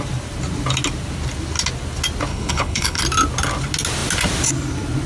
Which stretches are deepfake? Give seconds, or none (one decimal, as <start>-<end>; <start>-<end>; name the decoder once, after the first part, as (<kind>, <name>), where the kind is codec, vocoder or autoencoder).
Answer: 2.3-3.0 (codec, HILCodec)